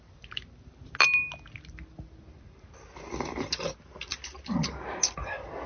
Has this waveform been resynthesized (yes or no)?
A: no